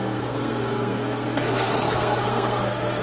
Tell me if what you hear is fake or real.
fake